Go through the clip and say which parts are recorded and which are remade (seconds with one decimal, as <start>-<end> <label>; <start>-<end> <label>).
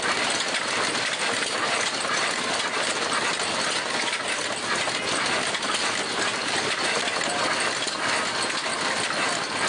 0.0-9.7 recorded